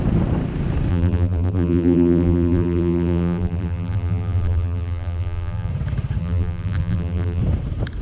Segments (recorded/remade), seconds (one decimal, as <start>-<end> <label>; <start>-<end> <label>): 0.0-0.9 recorded; 0.9-5.7 remade; 5.7-6.2 recorded; 6.2-7.4 remade; 7.4-8.0 recorded